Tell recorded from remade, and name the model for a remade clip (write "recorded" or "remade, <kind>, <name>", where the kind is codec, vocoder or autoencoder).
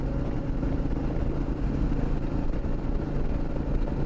recorded